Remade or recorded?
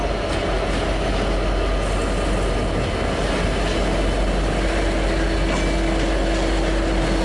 recorded